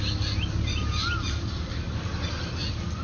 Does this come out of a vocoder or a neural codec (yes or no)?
no